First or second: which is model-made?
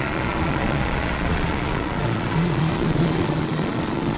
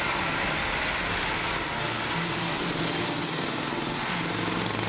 first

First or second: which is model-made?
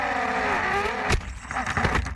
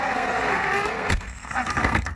second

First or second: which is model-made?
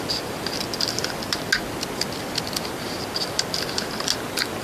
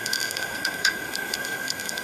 second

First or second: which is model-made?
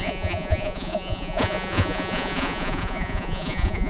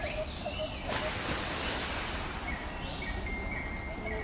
first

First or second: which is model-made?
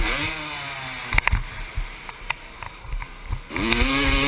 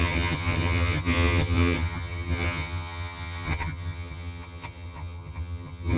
second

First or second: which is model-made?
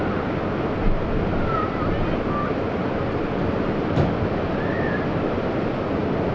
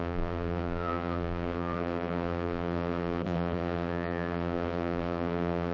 second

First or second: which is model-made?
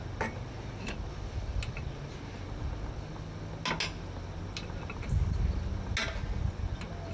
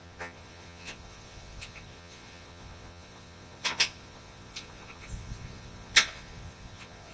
second